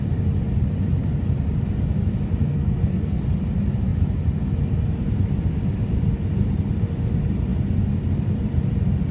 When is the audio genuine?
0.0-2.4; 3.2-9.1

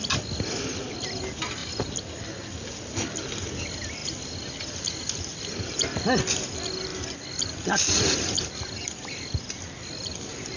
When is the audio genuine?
0.0-5.3; 5.8-6.9; 8.6-10.6

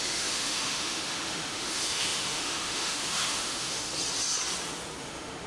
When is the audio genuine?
3.9-5.0

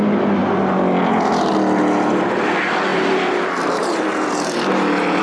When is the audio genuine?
0.0-2.9

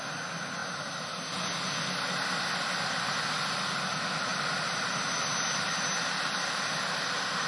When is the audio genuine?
0.0-7.5